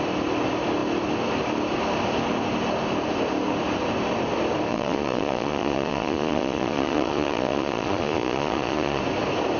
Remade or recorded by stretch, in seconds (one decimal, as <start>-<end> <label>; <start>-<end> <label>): 0.0-4.7 recorded; 4.7-9.0 remade; 9.0-9.6 recorded